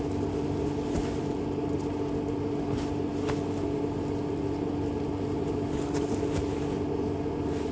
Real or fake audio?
real